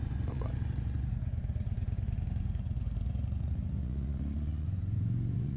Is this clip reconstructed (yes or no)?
yes